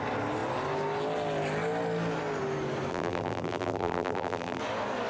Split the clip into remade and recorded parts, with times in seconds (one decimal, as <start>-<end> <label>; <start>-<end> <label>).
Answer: 0.0-2.9 recorded; 2.9-4.6 remade; 4.6-5.1 recorded